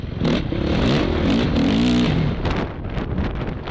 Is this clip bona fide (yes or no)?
yes